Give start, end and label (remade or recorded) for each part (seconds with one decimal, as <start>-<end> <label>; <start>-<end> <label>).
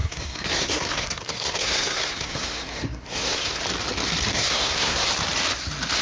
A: 0.0-3.6 remade; 3.6-4.3 recorded; 4.3-5.1 remade; 5.1-6.0 recorded